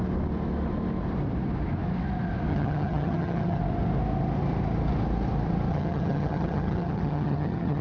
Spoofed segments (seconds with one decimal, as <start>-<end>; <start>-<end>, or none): 2.5-3.6; 5.7-7.8